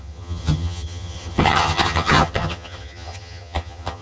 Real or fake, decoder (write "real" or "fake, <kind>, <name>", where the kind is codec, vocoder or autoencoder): fake, vocoder, HiFi-GAN